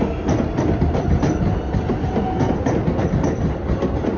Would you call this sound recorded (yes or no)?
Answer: yes